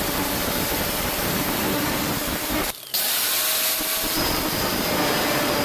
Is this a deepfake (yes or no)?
yes